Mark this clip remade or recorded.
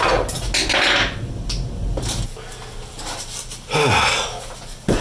recorded